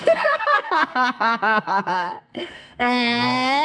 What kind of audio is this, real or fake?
fake